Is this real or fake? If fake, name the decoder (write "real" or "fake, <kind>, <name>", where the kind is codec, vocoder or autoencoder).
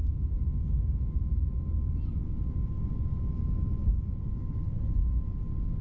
real